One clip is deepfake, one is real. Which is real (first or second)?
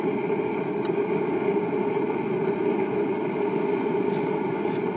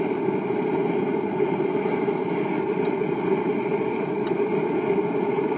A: first